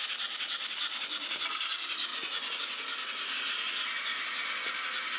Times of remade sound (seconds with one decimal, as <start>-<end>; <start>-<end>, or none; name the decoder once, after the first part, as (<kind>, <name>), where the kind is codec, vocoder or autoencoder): none